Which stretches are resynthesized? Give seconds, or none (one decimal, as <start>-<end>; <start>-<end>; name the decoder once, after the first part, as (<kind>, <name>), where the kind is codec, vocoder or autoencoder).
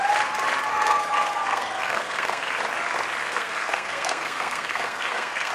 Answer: 0.7-2.5 (codec, SNAC); 3.2-5.5